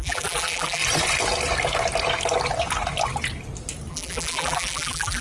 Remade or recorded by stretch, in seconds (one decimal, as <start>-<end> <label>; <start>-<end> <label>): 0.0-0.8 remade; 0.8-3.9 recorded; 3.9-5.2 remade